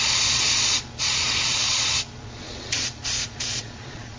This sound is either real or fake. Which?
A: fake